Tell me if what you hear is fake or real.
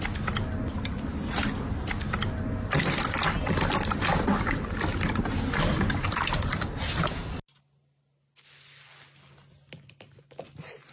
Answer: real